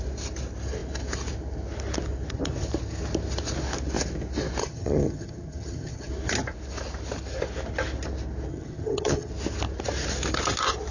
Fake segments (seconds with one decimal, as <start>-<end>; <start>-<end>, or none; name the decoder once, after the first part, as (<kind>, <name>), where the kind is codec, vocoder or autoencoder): 4.6-6.1 (vocoder, HiFi-GAN); 8.5-9.3